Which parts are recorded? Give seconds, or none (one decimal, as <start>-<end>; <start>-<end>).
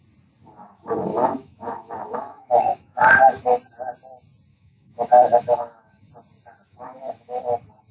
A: 0.0-1.1; 3.5-4.5; 6.1-6.7; 7.4-7.9